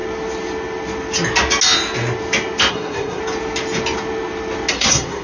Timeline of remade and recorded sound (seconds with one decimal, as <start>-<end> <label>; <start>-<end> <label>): 0.0-2.7 recorded; 2.7-3.2 remade; 3.2-4.7 recorded; 4.7-5.2 remade